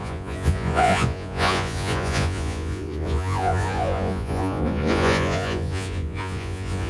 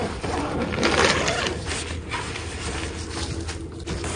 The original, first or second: second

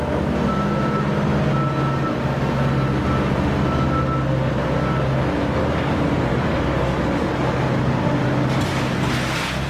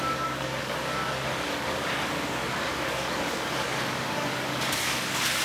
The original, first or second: first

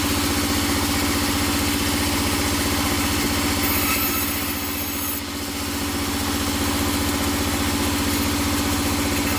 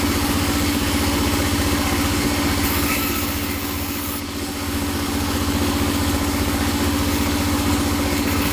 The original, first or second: first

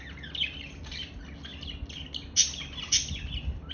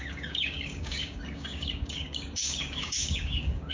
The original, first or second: first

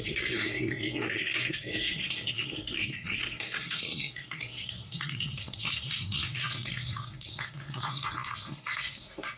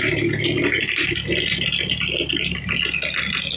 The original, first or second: second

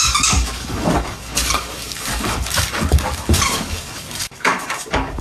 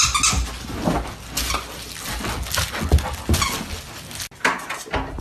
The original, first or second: second